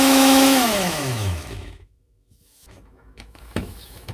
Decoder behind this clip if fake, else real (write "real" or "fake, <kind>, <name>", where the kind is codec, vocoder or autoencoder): fake, autoencoder, DAC-VAE